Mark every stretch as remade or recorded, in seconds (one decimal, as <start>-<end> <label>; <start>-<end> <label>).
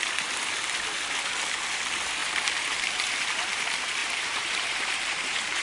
0.0-2.2 recorded; 2.2-3.6 remade; 3.6-4.0 recorded; 4.0-5.6 remade